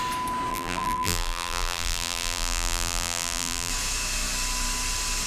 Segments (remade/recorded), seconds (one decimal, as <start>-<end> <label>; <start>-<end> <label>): 0.0-0.5 recorded; 0.5-3.7 remade; 3.7-5.3 recorded